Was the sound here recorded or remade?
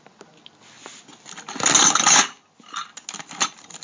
recorded